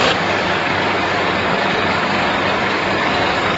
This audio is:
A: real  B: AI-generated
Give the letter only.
B